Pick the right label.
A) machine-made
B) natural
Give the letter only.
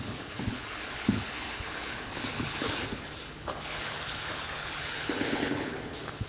A